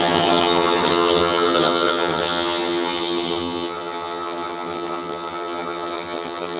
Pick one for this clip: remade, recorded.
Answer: remade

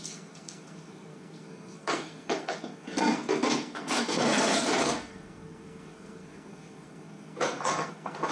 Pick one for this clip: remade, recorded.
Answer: remade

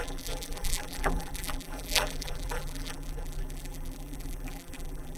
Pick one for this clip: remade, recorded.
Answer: remade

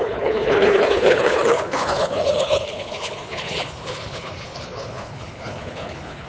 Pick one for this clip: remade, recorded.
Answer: remade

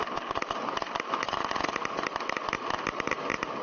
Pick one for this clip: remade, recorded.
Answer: recorded